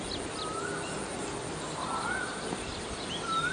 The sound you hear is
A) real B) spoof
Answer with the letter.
A